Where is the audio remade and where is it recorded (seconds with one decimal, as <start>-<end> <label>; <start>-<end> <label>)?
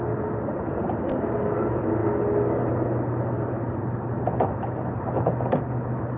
0.0-6.2 recorded